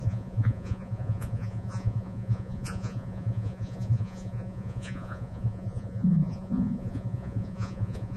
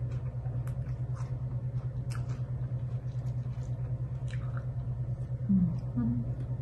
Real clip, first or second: second